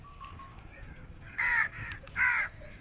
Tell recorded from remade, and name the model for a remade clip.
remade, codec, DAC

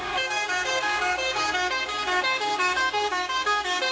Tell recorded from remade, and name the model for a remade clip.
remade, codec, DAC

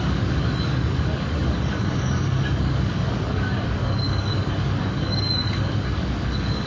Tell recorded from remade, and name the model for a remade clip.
remade, codec, DAC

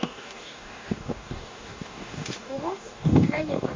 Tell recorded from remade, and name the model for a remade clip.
remade, codec, DAC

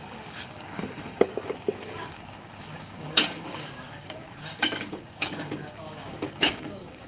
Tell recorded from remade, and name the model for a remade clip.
remade, codec, DAC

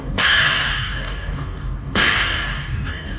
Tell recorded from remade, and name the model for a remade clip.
remade, codec, DAC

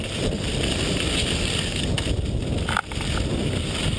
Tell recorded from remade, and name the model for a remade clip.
recorded